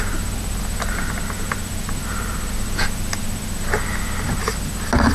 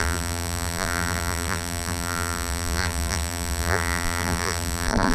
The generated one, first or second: second